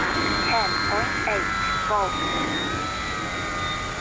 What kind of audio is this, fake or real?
real